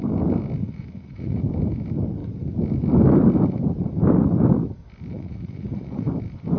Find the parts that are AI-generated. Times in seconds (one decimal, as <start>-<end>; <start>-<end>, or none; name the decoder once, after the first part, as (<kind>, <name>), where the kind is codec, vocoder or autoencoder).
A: 0.6-1.4 (vocoder, Vocos); 5.1-6.1